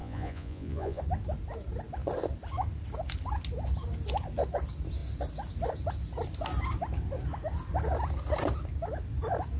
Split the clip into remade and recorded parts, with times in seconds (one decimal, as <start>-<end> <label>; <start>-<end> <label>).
0.0-1.0 remade; 1.0-9.6 recorded